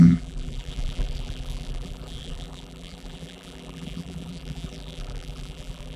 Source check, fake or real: fake